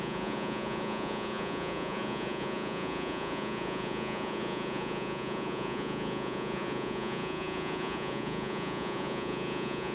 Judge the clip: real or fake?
fake